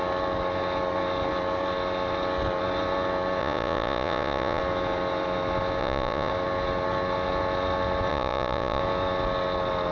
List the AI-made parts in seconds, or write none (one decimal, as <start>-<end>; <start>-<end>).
3.4-4.6; 5.8-6.3; 8.1-8.8